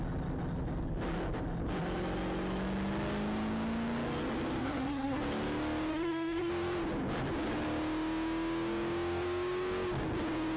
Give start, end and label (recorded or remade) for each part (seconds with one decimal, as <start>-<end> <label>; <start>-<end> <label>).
0.0-4.6 recorded; 4.6-5.2 remade; 5.2-5.9 recorded; 5.9-6.5 remade; 6.5-10.6 recorded